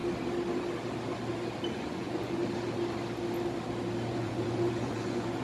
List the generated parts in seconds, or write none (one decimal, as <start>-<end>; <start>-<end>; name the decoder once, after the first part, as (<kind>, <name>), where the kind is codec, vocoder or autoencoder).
1.7-2.4 (vocoder, Vocos); 4.1-5.4